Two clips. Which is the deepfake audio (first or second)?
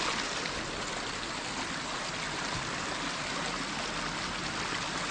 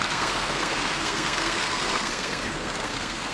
second